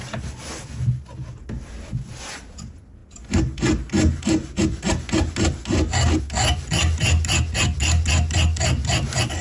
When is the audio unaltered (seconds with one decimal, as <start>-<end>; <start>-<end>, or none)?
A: 0.0-9.4